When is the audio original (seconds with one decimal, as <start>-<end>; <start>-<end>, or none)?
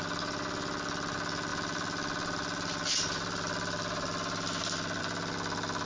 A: 0.0-1.5; 5.0-5.9